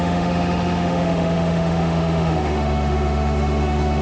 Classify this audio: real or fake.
fake